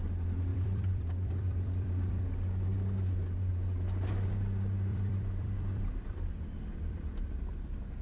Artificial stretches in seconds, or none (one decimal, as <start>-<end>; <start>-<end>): 0.5-2.2; 4.9-7.5